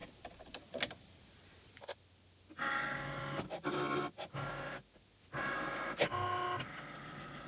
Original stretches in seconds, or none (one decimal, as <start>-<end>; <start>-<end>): 0.0-7.5